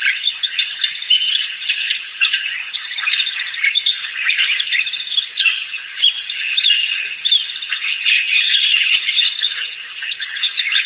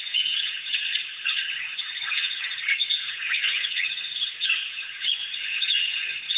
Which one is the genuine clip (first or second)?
first